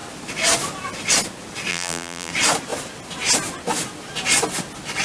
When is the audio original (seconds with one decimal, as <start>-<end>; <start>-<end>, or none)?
0.0-1.7; 2.3-5.0